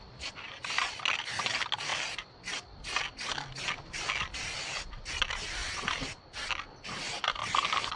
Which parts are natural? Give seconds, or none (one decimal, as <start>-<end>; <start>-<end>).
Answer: 0.0-8.0